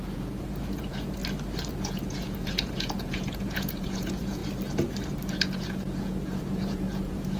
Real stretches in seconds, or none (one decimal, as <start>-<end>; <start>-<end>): 1.2-1.7; 4.4-5.3